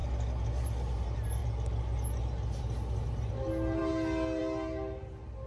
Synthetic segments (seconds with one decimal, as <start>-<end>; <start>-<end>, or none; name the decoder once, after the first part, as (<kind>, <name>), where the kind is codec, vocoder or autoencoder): none